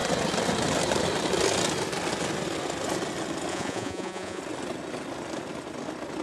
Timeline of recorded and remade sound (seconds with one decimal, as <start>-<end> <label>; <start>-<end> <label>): 0.0-3.5 recorded; 3.5-4.4 remade; 4.4-6.2 recorded